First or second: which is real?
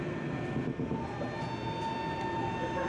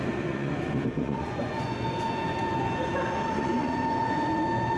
first